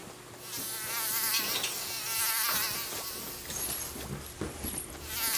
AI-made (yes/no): no